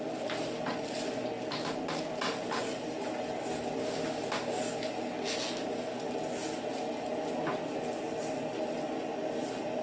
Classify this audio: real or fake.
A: real